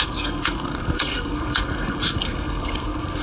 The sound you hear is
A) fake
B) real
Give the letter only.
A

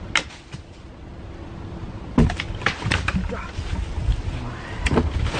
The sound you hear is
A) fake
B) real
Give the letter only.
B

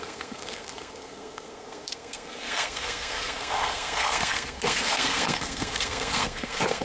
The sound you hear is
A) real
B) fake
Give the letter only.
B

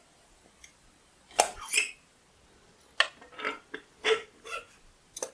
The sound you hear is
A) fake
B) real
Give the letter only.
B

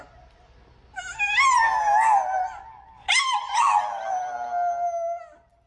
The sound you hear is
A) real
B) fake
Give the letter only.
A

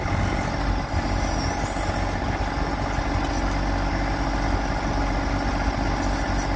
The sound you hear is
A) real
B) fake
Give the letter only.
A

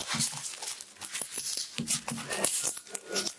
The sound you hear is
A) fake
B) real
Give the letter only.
B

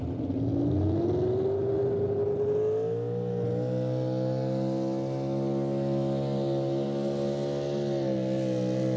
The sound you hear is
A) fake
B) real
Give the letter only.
B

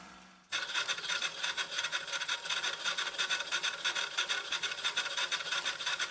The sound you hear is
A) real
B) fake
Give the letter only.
B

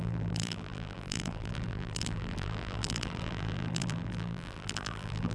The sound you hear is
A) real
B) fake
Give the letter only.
B